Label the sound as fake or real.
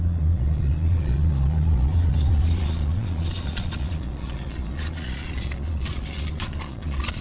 fake